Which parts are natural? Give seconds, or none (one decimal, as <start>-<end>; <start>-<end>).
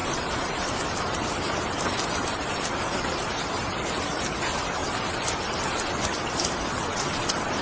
3.2-7.6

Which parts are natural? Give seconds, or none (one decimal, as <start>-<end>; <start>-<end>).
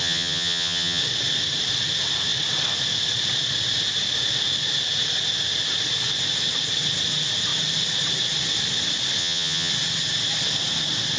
1.0-9.2; 9.7-11.2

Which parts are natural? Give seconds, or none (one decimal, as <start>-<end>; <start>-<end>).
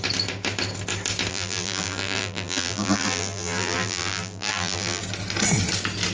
0.0-1.3; 5.0-6.1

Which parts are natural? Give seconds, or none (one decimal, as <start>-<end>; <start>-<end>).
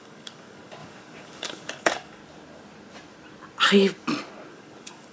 2.2-4.5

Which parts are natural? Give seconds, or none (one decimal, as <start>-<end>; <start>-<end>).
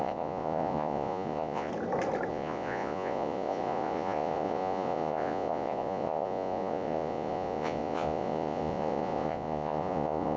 1.7-2.3